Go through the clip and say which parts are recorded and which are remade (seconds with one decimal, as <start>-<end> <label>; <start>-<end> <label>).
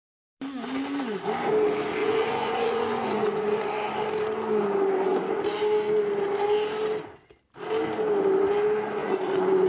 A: 0.0-2.0 recorded; 2.0-3.6 remade; 3.6-9.0 recorded; 9.0-9.7 remade